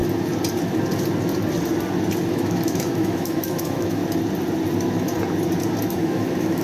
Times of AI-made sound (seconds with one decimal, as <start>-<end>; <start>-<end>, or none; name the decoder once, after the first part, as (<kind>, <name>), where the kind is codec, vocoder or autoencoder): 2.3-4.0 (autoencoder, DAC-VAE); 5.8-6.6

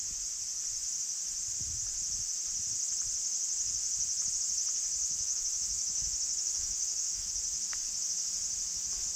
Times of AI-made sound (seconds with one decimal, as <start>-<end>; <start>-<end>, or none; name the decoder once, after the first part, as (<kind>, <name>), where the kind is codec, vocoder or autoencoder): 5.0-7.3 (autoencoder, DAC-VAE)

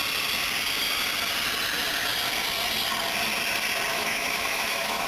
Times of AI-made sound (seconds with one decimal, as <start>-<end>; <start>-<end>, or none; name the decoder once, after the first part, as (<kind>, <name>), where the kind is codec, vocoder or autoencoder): 3.9-5.1 (autoencoder, DAC-VAE)